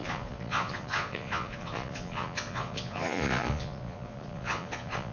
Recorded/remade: remade